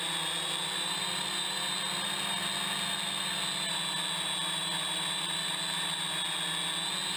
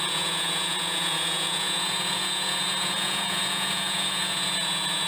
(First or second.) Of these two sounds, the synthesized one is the second